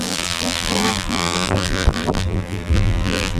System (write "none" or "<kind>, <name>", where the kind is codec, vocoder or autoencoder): vocoder, BigVGAN v2